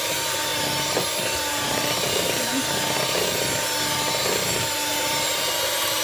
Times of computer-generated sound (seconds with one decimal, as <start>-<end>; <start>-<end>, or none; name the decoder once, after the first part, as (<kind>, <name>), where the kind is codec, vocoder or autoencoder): 0.0-0.5 (vocoder, BigVGAN v2); 1.5-2.5; 4.2-6.0